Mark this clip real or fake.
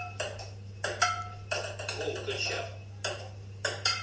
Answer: real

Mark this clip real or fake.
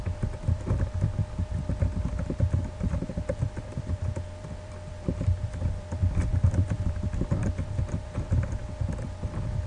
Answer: fake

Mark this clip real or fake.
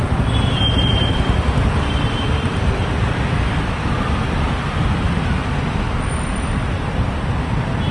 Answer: fake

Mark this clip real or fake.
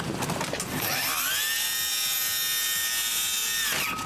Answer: real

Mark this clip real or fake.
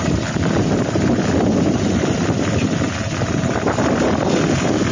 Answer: fake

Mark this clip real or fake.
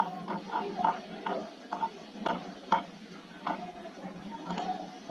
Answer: real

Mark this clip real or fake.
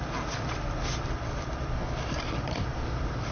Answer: fake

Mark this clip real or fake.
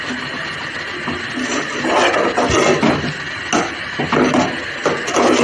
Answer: real